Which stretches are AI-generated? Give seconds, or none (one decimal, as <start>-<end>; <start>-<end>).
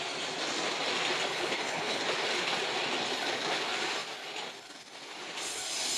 1.3-2.0